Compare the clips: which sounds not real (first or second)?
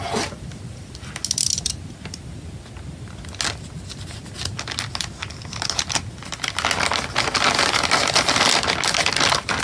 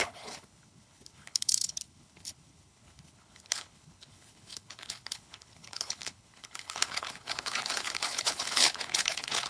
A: second